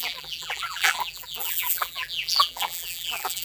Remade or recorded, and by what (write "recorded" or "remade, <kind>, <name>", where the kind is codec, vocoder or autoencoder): remade, vocoder, BigVGAN v2